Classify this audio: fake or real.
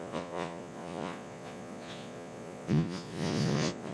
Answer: fake